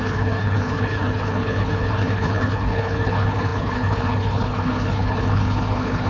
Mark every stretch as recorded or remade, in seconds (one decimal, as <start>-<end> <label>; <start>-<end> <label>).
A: 0.0-6.1 remade